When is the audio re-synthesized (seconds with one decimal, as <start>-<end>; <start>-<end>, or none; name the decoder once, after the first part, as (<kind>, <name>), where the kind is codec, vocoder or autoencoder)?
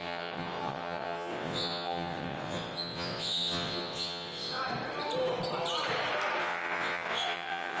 0.0-4.6 (vocoder, WaveNeXt); 6.4-7.8